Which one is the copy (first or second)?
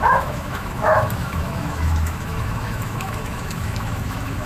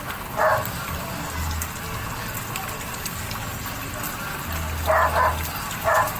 first